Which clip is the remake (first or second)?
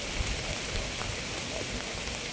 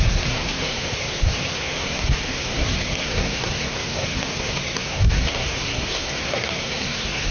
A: second